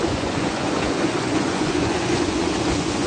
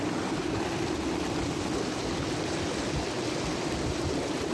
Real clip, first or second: second